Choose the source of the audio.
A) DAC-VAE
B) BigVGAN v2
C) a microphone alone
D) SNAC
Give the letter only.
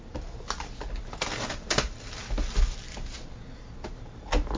C